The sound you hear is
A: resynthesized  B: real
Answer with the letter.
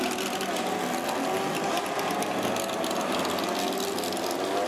B